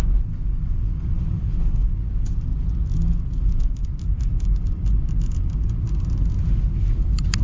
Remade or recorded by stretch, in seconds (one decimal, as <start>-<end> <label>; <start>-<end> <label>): 0.0-7.4 recorded